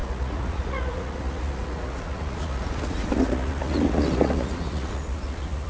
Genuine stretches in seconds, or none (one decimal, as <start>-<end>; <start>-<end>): none